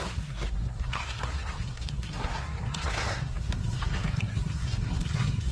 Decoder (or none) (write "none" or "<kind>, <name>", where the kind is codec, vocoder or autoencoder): codec, SNAC